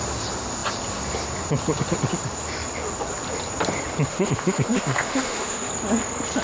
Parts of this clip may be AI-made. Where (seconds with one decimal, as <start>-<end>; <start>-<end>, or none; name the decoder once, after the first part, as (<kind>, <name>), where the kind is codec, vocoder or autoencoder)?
4.1-5.7 (autoencoder, DAC-VAE)